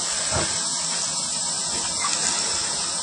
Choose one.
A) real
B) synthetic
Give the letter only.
A